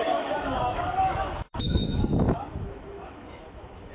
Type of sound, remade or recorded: remade